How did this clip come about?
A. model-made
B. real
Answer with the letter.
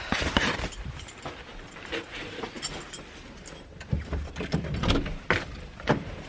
B